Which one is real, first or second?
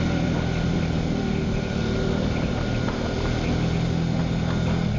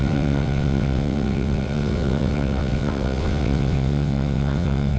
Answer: first